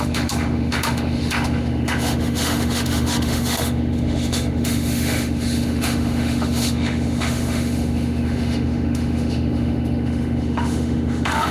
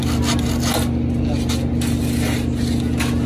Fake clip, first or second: first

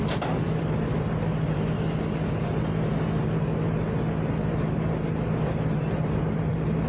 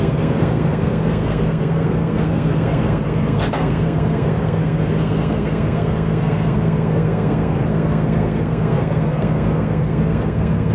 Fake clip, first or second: second